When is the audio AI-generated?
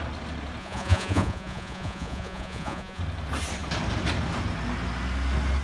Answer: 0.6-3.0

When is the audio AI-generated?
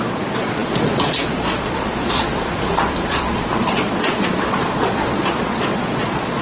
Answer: 0.0-6.4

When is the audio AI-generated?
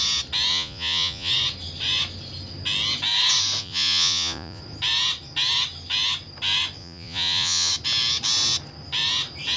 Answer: 0.5-1.3; 3.6-4.6; 6.8-7.7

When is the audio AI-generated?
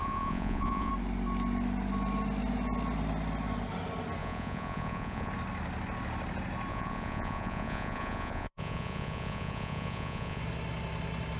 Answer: 0.0-0.9; 4.2-5.3; 6.7-10.4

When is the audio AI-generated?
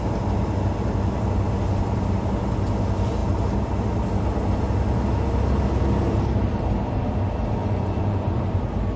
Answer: 7.6-8.4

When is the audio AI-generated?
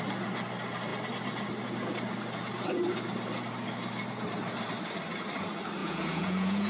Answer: 5.8-6.7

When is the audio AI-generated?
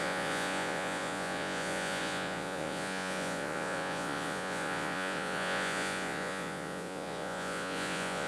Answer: 0.0-8.3